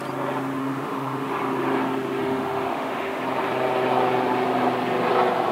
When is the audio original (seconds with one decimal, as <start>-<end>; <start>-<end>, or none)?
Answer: 0.0-0.6; 1.3-2.2; 3.2-5.5